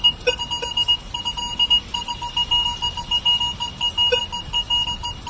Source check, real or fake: real